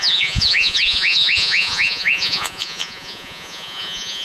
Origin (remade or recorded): remade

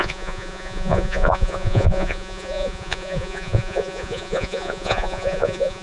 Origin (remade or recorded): remade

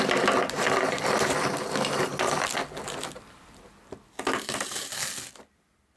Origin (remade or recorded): recorded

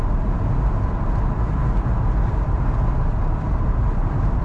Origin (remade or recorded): recorded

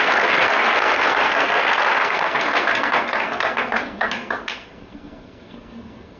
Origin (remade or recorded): remade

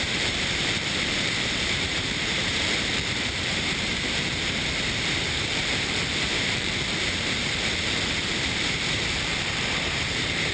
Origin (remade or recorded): remade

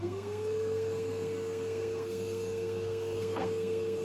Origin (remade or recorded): remade